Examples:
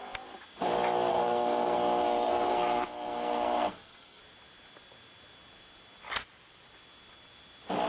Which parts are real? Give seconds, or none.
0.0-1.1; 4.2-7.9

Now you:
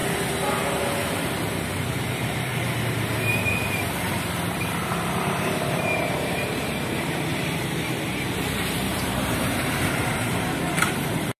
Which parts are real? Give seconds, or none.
0.0-5.1

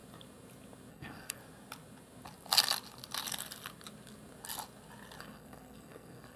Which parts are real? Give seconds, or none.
0.0-0.9; 1.4-5.2

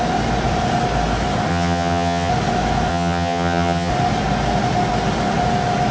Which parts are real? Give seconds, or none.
0.0-1.5; 2.3-2.9; 3.9-5.9

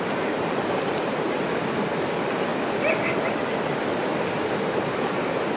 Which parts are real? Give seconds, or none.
2.5-4.9

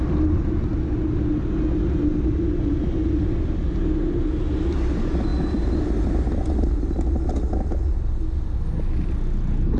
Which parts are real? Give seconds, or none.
0.0-9.8

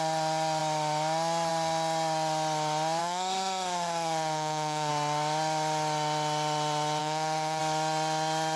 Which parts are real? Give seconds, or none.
0.0-3.0; 4.9-7.0; 7.6-8.6

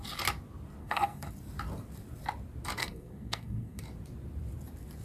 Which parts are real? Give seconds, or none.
0.0-0.8; 1.3-2.8; 3.8-5.0